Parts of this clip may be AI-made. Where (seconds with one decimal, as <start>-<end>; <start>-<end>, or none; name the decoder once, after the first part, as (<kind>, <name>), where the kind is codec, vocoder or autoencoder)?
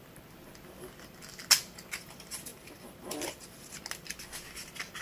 none